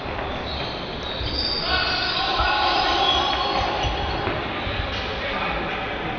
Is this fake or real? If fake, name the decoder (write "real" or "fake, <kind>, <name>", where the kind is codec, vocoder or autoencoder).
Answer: real